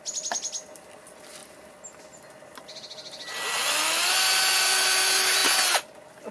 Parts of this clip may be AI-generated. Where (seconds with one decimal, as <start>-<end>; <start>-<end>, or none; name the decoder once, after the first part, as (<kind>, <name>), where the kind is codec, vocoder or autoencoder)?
none